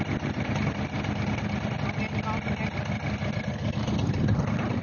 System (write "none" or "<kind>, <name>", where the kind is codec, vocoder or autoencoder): none